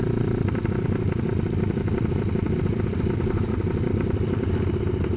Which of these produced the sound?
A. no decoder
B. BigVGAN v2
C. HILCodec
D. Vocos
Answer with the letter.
B